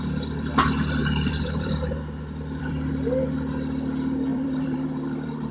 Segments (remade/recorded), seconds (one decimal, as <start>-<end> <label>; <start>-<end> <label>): 0.0-1.0 recorded; 1.0-2.9 remade; 2.9-4.3 recorded; 4.3-5.5 remade